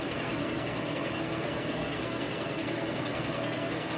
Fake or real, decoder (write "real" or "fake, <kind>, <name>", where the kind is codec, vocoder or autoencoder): fake, codec, SNAC